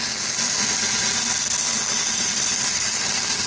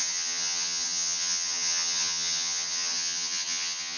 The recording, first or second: first